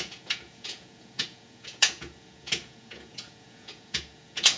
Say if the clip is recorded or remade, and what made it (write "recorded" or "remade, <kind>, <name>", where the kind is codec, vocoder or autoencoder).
remade, vocoder, Vocos